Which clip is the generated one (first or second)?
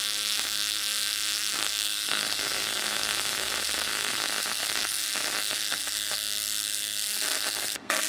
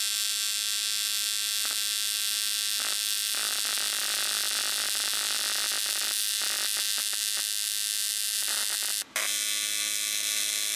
first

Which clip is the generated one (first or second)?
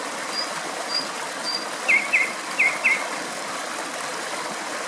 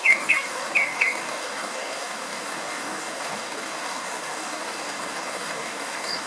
second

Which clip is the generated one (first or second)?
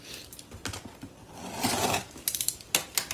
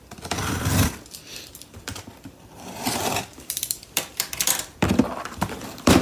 second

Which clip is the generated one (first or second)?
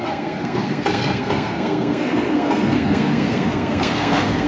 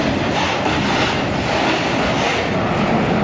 first